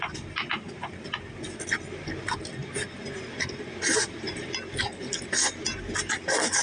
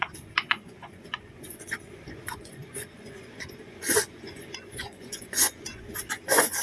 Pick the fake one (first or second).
second